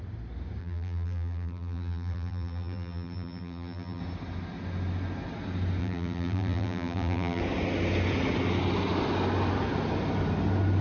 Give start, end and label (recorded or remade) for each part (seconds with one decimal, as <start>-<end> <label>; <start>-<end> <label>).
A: 0.0-0.6 recorded; 0.6-4.0 remade; 4.0-5.8 recorded; 5.8-7.4 remade; 7.4-10.8 recorded